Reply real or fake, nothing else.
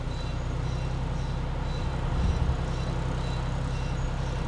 real